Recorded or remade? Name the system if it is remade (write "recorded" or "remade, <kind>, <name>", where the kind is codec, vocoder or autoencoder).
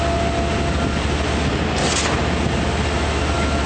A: recorded